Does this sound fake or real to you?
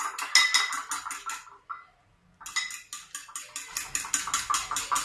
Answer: real